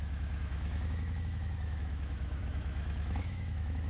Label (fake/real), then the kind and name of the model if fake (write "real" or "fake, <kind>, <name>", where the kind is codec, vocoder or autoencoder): fake, autoencoder, DAC-VAE